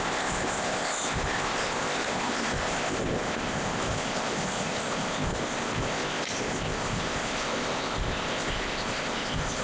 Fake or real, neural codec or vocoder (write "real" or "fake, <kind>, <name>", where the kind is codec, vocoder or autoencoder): fake, codec, ZipCodec